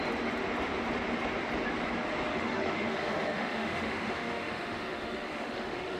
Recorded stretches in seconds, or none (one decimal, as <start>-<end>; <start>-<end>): 0.0-2.3